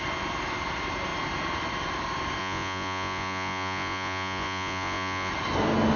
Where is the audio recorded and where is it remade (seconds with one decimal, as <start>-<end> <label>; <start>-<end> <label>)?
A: 0.0-2.4 recorded; 2.4-5.3 remade; 5.3-6.0 recorded